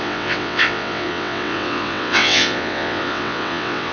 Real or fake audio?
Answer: fake